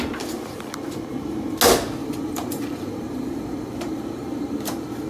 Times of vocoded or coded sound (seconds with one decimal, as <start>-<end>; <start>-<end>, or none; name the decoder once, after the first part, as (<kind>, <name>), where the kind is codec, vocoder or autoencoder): 2.0-5.1 (vocoder, BigVGAN v2)